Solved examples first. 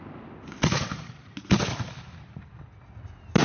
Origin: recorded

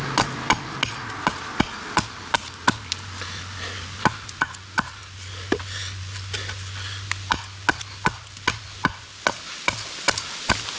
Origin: recorded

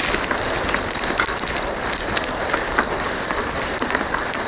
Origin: recorded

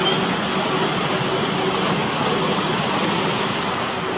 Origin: recorded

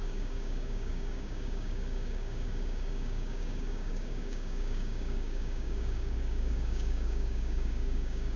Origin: remade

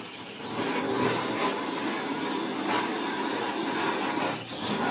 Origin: recorded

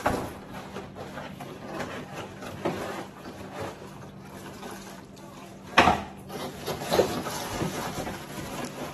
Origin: recorded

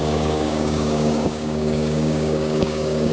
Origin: remade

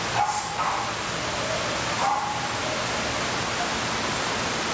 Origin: recorded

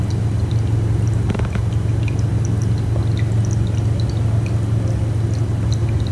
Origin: recorded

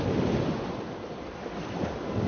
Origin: recorded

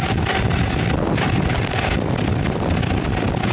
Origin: recorded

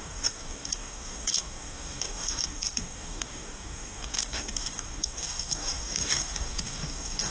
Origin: remade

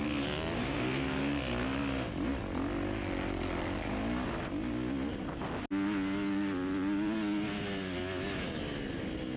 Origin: recorded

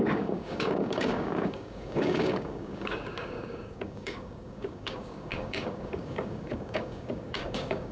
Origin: remade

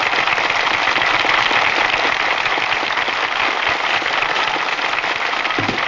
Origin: recorded